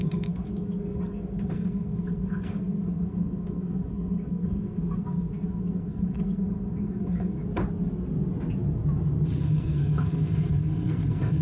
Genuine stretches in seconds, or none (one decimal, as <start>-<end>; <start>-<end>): 7.4-9.4